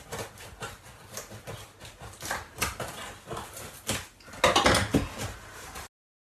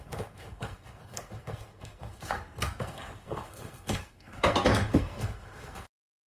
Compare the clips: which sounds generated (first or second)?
second